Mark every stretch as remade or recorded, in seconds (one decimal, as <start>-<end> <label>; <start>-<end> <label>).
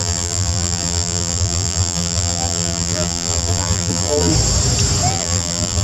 0.0-4.3 remade; 4.3-5.1 recorded; 5.1-5.8 remade